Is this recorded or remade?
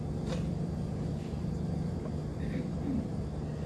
recorded